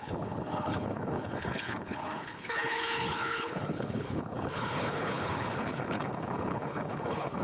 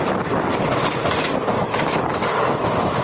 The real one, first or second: second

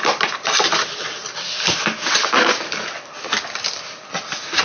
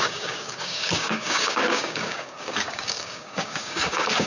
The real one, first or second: first